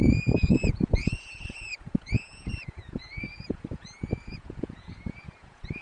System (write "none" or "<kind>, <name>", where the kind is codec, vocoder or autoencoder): vocoder, Vocos